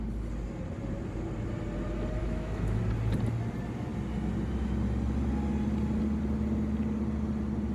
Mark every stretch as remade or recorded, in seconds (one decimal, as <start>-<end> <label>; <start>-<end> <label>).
0.0-2.2 recorded; 2.2-2.8 remade; 2.8-7.7 recorded